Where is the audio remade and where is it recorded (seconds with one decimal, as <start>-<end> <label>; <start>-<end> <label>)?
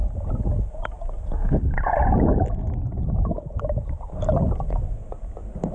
0.0-5.7 recorded